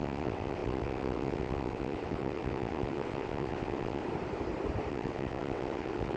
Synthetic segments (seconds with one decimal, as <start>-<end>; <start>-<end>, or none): 0.0-4.0; 4.9-6.2